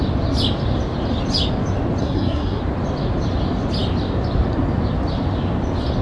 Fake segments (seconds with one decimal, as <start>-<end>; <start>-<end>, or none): 2.0-2.6